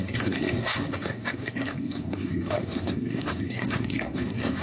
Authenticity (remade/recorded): remade